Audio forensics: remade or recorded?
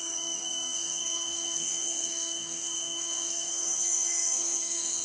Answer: remade